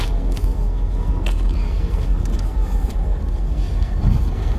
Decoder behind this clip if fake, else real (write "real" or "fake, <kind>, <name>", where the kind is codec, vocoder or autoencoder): fake, codec, SNAC